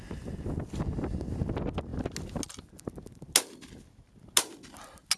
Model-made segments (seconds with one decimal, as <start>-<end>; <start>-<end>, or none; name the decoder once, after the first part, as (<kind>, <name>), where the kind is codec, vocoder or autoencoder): none